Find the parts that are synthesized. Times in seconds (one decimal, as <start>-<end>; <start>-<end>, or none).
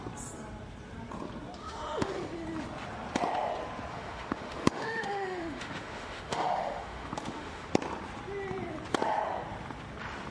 1.6-2.1; 3.9-7.7